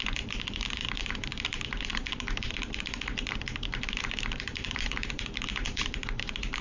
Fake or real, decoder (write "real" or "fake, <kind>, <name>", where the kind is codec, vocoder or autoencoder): fake, vocoder, BigVGAN v2